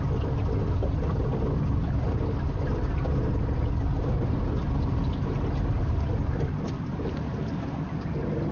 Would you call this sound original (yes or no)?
yes